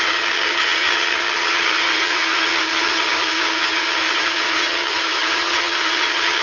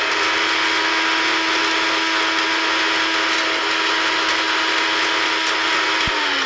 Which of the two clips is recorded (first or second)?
second